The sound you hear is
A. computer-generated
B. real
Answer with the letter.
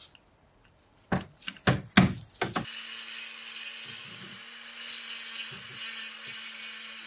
B